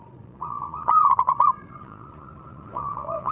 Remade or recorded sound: remade